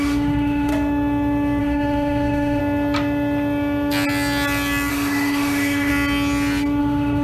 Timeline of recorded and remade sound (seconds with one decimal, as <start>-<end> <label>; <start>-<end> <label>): 0.0-0.7 remade; 0.7-1.6 recorded; 1.6-2.6 remade; 2.6-4.9 recorded; 4.9-5.9 remade; 5.9-6.8 recorded; 6.8-7.2 remade